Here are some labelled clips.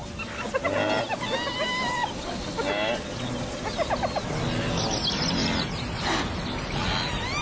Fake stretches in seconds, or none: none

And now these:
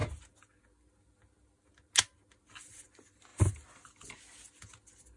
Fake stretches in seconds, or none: none

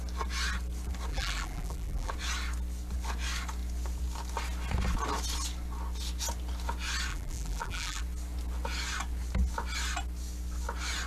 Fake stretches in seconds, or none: 1.1-2.1 (vocoder, BigVGAN v2); 7.1-8.0

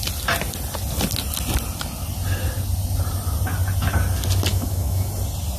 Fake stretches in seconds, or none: 4.5-5.1 (autoencoder, DAC-VAE)

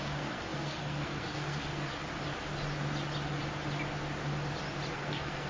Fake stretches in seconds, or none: 0.0-1.9 (codec, SNAC); 4.9-5.5